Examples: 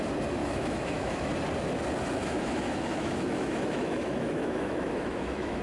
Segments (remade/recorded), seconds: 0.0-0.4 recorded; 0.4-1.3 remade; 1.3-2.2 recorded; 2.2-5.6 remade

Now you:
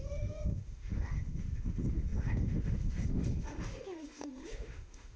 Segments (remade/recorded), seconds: 0.0-5.2 remade

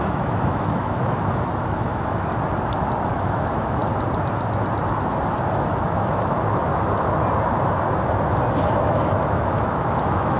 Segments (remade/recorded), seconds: 0.0-2.3 remade; 2.3-3.1 recorded; 3.1-3.8 remade; 3.8-5.5 recorded; 5.5-6.7 remade; 6.7-8.5 recorded; 8.5-10.4 remade

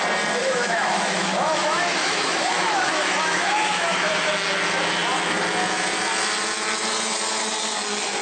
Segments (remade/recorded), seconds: 0.0-0.4 recorded; 0.4-4.3 remade; 4.3-8.2 recorded

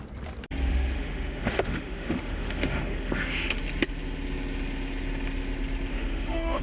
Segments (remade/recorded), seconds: 0.0-0.7 recorded; 0.7-3.6 remade; 3.6-5.9 recorded; 5.9-6.6 remade

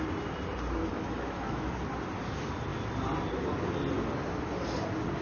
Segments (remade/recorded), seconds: 0.0-0.9 recorded; 0.9-1.7 remade; 1.7-5.2 recorded